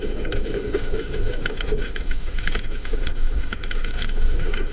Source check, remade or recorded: remade